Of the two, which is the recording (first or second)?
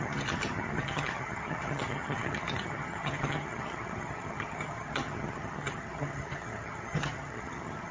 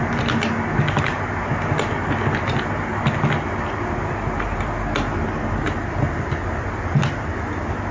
second